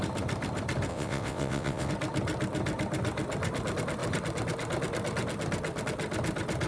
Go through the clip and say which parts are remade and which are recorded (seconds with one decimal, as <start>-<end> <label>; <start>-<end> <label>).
0.0-0.9 recorded; 0.9-1.9 remade; 1.9-6.7 recorded